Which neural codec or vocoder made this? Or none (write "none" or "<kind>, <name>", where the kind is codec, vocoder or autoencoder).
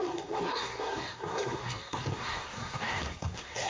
codec, SNAC